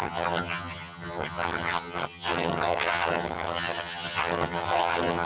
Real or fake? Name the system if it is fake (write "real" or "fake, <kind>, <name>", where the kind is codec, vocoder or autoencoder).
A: fake, vocoder, HiFi-GAN